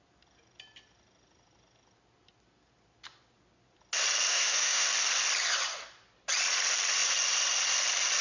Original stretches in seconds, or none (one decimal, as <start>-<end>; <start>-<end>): 0.0-4.3; 4.9-8.2